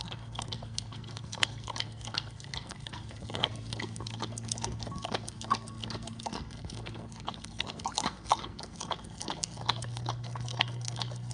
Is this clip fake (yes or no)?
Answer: yes